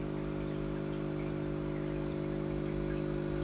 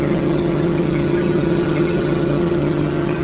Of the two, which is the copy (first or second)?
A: second